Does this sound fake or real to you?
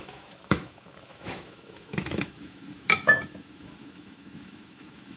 fake